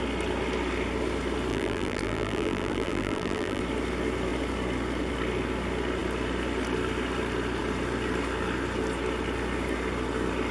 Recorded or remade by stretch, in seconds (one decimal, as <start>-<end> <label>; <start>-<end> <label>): 0.0-1.5 recorded; 1.5-3.6 remade; 3.6-10.5 recorded